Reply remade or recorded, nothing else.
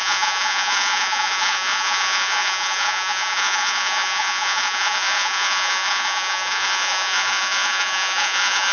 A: remade